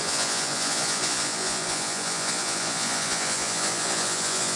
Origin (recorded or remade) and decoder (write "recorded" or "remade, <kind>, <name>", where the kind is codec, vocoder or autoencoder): remade, vocoder, Vocos